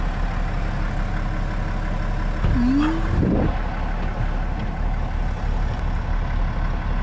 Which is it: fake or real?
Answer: real